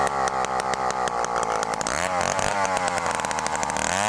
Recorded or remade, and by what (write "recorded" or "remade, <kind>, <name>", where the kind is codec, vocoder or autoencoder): recorded